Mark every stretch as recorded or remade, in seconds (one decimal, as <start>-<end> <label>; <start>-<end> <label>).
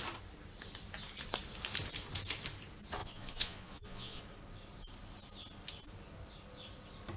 0.0-3.0 recorded; 3.0-4.2 remade; 4.2-7.2 recorded